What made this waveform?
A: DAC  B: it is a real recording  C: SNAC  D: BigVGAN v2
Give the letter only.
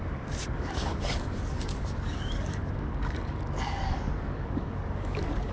A